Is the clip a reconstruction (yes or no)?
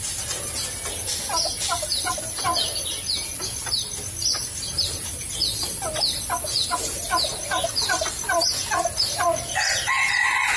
no